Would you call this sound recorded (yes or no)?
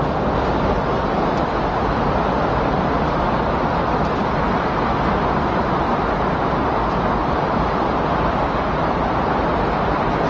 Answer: yes